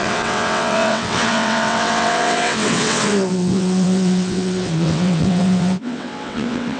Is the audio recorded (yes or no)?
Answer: no